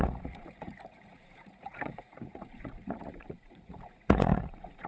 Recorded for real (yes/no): no